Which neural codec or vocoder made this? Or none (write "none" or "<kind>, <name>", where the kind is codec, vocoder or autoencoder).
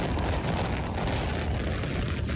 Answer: none